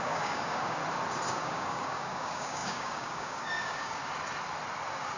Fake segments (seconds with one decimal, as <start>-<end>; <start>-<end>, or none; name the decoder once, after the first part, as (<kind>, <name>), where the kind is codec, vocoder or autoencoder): 0.0-0.8 (codec, DAC); 1.3-4.0